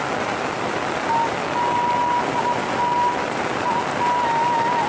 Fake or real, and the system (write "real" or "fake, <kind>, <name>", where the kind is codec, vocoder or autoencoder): real